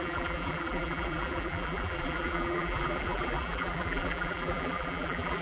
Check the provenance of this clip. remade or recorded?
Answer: remade